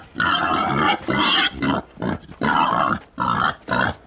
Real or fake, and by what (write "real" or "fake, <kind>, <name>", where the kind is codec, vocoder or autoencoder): real